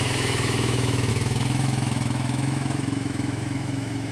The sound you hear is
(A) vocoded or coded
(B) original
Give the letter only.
A